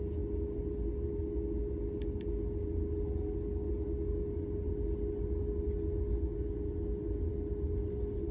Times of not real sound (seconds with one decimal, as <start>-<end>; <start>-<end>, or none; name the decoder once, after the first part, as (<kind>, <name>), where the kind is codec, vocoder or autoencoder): none